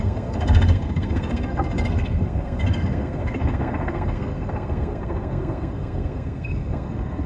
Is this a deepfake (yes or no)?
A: yes